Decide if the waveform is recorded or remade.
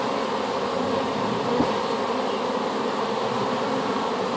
recorded